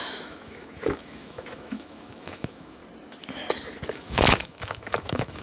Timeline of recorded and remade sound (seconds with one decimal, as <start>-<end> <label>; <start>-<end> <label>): 0.0-2.8 remade; 2.8-3.9 recorded; 3.9-5.4 remade

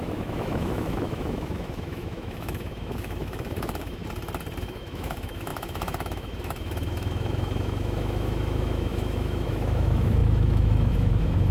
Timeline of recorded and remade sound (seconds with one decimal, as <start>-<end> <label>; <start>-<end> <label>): 0.0-4.0 remade; 4.0-4.6 recorded; 4.6-11.5 remade